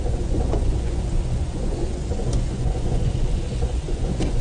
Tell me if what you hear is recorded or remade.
remade